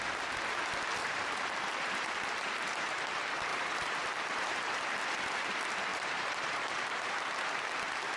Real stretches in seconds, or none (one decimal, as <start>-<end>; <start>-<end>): 0.0-1.0; 3.0-3.5; 5.2-5.9; 7.4-8.2